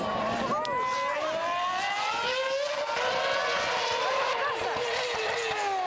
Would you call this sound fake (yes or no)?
no